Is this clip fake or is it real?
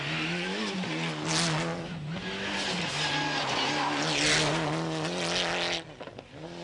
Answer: real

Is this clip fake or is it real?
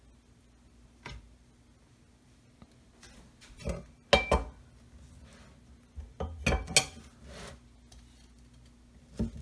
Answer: real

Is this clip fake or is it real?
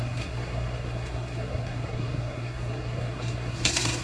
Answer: fake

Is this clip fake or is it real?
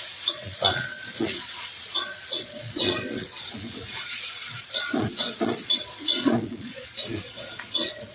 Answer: fake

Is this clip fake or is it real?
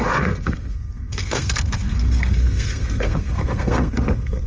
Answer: fake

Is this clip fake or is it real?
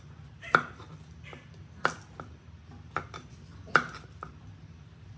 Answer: real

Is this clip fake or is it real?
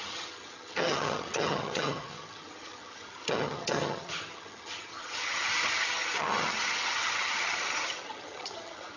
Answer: fake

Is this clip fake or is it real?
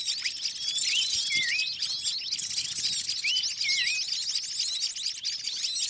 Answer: real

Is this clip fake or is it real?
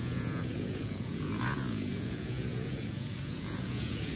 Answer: fake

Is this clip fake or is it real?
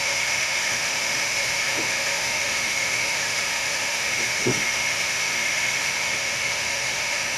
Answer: fake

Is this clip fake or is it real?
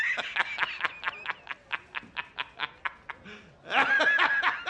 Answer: real